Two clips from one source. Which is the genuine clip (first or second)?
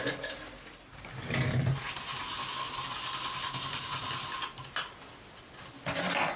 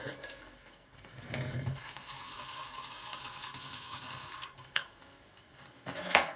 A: first